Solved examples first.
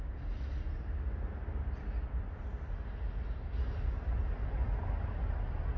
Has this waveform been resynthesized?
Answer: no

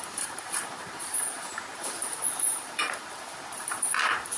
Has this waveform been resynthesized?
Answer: yes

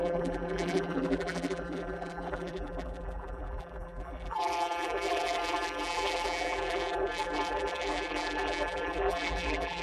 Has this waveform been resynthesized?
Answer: yes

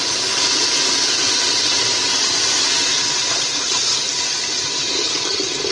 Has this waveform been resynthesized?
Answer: no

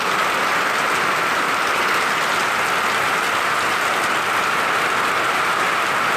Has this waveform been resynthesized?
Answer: no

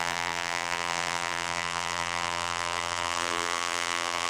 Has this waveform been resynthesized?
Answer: yes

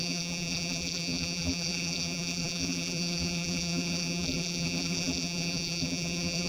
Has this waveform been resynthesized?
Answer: yes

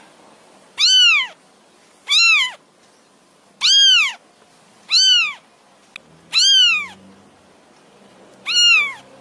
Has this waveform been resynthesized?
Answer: no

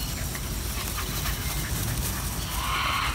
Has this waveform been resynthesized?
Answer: no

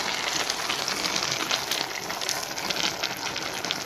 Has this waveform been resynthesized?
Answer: no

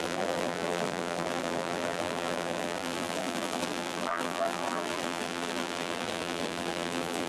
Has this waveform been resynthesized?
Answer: yes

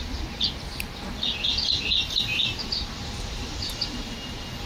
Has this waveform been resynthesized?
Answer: no